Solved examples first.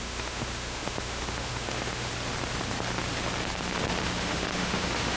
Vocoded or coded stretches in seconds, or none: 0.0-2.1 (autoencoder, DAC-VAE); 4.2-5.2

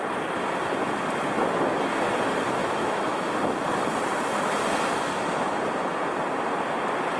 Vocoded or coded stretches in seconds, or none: 2.6-3.3 (autoencoder, DAC-VAE)

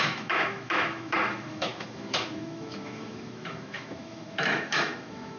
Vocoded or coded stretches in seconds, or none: 0.0-5.4 (autoencoder, DAC-VAE)

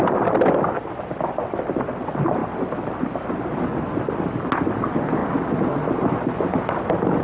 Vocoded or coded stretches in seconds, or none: none